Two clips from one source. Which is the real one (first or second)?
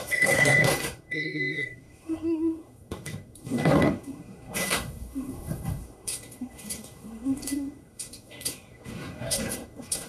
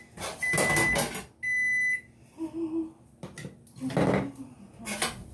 second